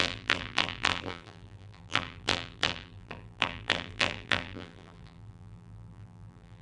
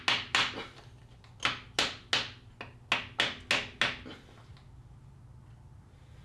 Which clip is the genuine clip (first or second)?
second